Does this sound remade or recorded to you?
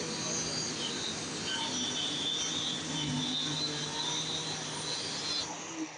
recorded